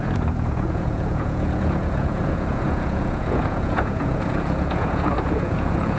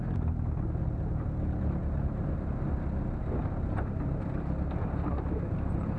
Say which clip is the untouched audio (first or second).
second